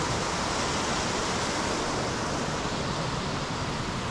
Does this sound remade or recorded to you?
recorded